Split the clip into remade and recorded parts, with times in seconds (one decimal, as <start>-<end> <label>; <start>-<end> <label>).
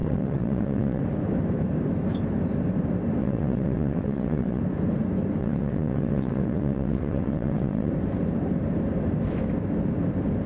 0.0-1.0 remade; 1.0-3.2 recorded; 3.2-4.6 remade; 4.6-5.4 recorded; 5.4-7.9 remade; 7.9-10.5 recorded